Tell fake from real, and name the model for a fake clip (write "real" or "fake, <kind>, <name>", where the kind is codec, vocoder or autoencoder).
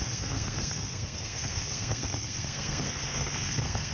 fake, codec, SNAC